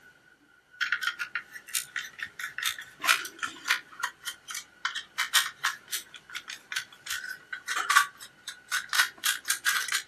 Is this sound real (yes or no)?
no